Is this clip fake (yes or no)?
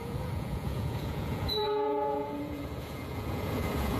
yes